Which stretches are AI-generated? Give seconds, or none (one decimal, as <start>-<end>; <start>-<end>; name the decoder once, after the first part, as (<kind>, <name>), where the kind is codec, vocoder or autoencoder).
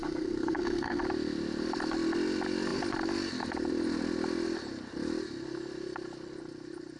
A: 0.0-1.0 (codec, SNAC)